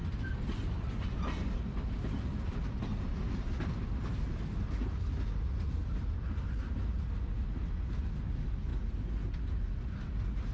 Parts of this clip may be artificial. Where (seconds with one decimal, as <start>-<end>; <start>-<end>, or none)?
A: none

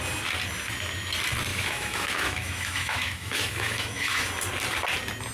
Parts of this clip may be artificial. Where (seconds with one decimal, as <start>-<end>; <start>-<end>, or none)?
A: 1.5-4.3

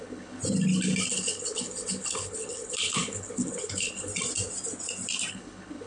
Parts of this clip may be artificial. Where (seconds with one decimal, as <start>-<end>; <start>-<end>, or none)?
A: 0.0-0.4; 1.1-4.1; 5.3-5.9

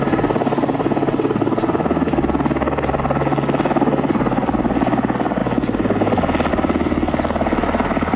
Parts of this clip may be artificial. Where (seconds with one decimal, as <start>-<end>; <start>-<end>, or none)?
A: none

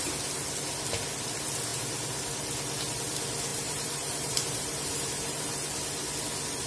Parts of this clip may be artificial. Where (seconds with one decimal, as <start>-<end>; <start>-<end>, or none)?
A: 3.5-5.5